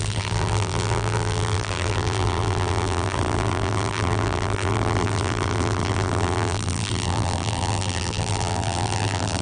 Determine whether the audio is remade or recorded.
remade